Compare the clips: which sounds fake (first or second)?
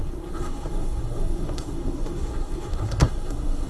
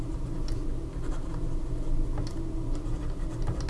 first